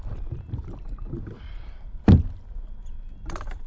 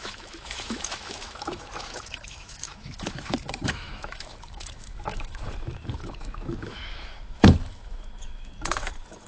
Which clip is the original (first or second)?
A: first